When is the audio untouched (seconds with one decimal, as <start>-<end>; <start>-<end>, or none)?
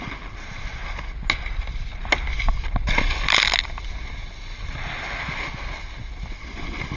0.0-7.0